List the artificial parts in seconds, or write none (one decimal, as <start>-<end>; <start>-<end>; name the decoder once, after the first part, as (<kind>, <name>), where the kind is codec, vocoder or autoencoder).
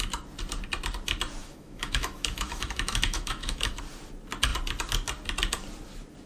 1.4-3.8 (autoencoder, DAC-VAE)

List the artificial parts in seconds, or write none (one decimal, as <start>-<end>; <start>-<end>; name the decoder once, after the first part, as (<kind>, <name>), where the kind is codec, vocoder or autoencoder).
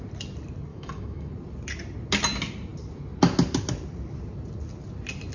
0.7-1.3 (autoencoder, DAC-VAE)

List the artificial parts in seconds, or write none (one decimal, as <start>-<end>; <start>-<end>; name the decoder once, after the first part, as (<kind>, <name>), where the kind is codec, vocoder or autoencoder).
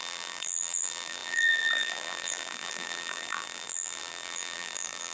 0.0-5.1 (vocoder, BigVGAN v2)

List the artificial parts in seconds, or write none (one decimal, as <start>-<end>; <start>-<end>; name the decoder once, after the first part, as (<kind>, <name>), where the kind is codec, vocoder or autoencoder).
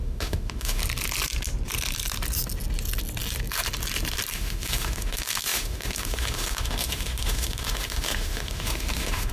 0.0-0.8 (autoencoder, DAC-VAE); 4.3-9.3